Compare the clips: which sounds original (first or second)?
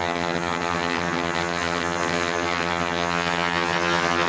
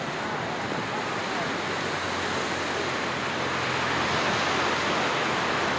second